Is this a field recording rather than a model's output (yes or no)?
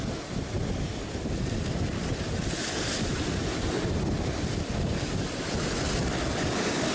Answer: yes